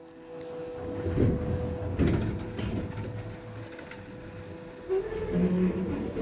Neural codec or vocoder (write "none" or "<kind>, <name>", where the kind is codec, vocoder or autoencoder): none